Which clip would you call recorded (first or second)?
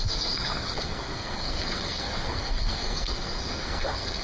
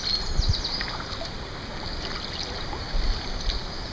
second